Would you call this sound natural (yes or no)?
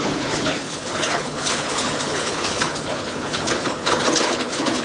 no